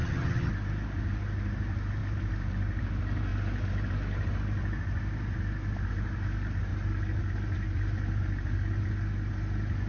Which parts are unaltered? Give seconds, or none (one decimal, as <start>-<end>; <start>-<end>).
0.5-9.9